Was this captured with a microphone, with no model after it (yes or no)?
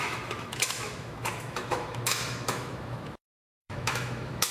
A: no